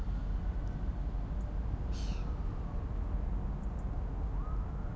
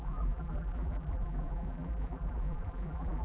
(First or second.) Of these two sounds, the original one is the first